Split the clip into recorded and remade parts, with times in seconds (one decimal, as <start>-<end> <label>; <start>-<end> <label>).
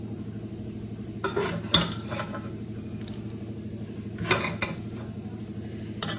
0.0-6.2 recorded